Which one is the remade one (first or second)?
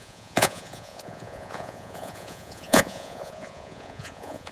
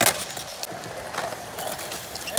first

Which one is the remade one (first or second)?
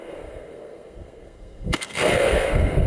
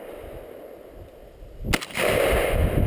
first